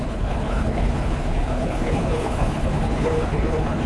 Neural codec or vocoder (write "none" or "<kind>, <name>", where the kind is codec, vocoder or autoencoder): codec, HILCodec